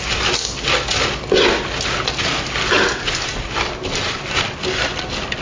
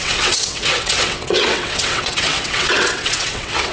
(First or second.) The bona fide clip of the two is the first